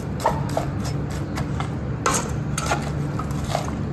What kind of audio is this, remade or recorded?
recorded